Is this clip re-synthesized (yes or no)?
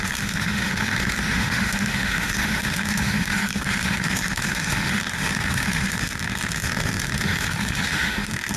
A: yes